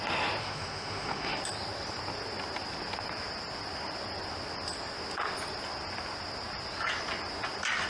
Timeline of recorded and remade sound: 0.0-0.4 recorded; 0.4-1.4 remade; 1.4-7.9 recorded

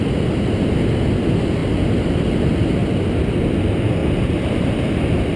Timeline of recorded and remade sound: 0.0-5.4 recorded

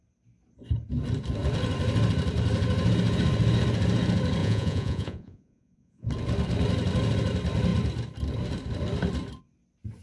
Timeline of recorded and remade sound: 0.0-4.4 recorded; 4.4-6.1 remade; 6.1-10.0 recorded

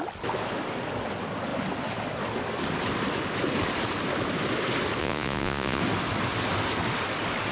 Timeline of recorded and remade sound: 0.0-5.0 recorded; 5.0-5.8 remade; 5.8-7.5 recorded